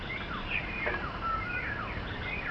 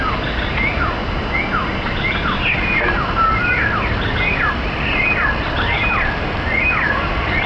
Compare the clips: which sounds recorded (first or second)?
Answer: second